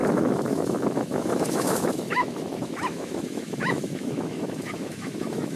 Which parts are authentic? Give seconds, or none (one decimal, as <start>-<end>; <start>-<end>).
none